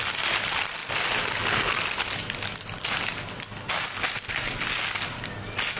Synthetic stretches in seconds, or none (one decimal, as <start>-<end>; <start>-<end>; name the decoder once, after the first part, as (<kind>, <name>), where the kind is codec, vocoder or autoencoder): none